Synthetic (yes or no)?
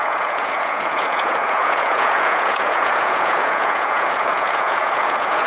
yes